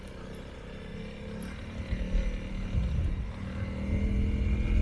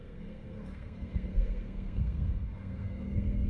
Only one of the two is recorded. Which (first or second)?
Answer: first